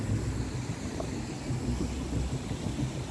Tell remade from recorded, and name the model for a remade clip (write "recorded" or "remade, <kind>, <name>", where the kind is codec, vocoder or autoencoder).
recorded